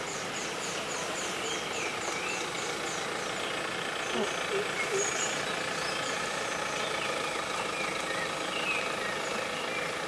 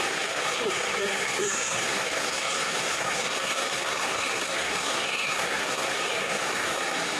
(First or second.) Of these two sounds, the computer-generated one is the second